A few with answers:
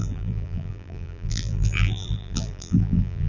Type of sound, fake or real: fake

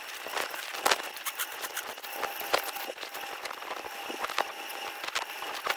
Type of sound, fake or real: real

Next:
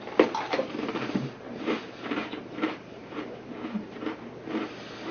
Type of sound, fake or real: fake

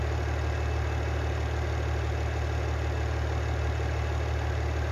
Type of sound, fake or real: real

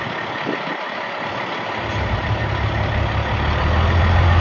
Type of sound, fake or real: real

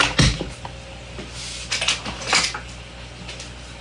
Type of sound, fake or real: real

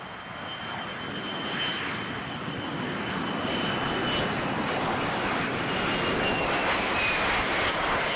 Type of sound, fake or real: real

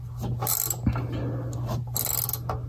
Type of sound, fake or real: real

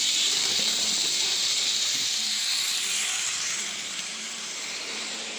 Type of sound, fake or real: fake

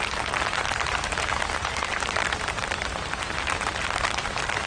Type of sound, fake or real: fake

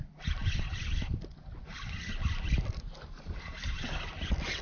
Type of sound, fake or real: real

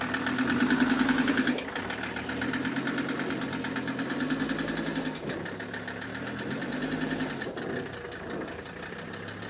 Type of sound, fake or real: fake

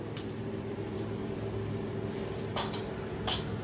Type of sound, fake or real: fake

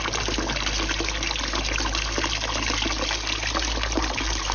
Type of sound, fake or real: real